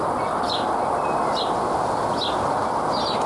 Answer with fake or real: real